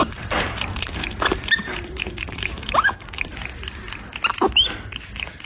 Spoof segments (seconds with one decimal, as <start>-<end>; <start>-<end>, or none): 0.0-3.3